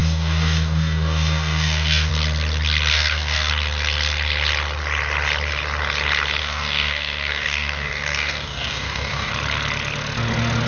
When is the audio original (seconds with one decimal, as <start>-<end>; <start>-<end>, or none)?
2.1-2.9; 3.5-6.4; 9.3-10.7